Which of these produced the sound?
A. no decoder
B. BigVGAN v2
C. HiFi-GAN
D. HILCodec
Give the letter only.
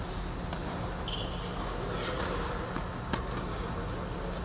A